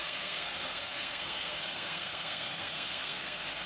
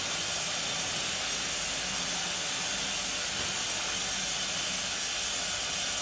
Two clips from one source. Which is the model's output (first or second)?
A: first